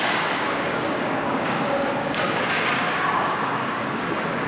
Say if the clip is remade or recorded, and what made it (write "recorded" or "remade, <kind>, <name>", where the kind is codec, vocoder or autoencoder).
remade, codec, DAC